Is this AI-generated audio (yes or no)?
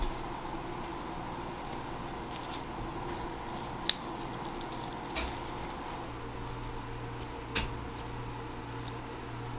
no